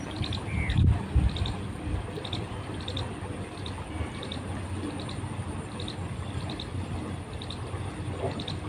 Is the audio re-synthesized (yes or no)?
no